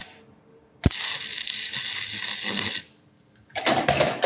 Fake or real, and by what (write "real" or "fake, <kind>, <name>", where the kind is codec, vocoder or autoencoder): real